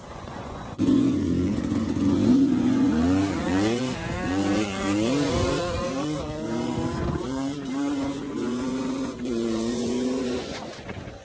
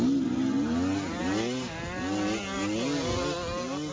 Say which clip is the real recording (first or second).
second